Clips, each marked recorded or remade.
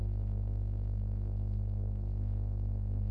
remade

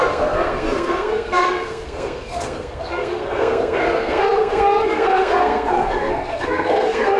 remade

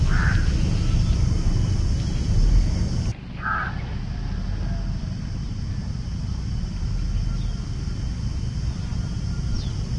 recorded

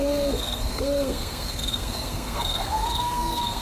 remade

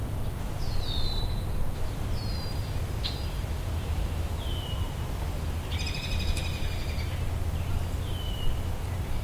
recorded